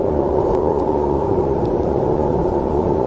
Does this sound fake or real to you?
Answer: fake